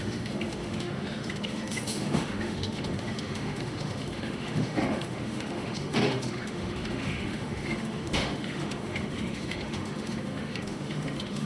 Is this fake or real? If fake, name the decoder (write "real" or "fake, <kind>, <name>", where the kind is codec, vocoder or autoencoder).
fake, autoencoder, DAC-VAE